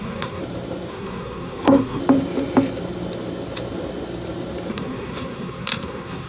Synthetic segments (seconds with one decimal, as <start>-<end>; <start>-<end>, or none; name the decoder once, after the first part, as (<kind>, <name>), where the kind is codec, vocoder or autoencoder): 0.0-0.4 (codec, SNAC); 0.9-2.0; 4.7-6.3